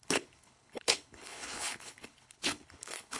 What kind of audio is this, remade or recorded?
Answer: remade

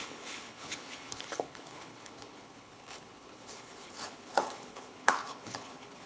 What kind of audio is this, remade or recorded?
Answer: remade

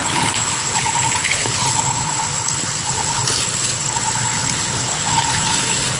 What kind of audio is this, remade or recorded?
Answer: remade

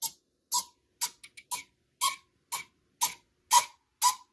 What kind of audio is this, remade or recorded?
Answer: recorded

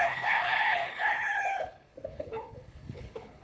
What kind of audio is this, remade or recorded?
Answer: remade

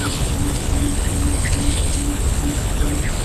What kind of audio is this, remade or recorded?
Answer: remade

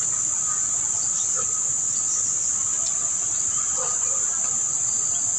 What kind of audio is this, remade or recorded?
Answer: recorded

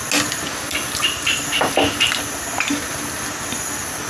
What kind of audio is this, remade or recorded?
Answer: recorded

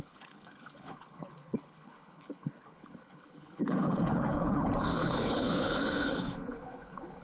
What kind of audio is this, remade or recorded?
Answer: remade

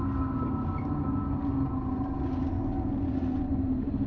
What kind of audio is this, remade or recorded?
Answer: recorded